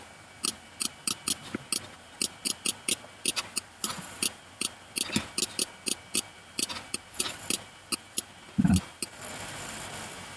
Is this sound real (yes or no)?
yes